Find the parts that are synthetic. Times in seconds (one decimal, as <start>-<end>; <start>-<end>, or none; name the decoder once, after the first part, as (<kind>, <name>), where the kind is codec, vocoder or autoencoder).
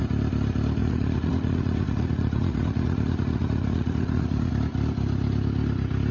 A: 0.8-4.5 (vocoder, Vocos)